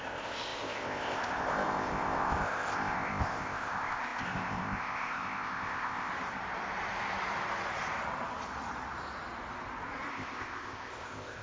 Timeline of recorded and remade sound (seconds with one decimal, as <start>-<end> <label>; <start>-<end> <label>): 0.0-6.1 remade; 6.1-10.1 recorded; 10.1-11.4 remade